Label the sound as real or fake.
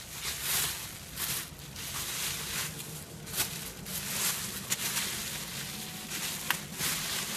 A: real